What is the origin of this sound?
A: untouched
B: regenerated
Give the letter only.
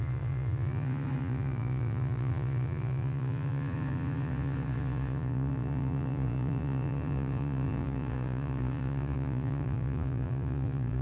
B